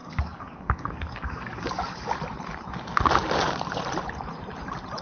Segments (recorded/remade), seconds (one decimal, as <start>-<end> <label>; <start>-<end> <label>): 0.0-2.1 remade; 2.1-5.0 recorded